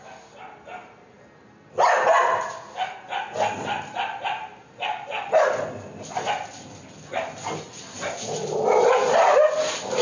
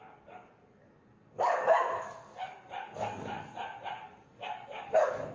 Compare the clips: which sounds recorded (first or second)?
first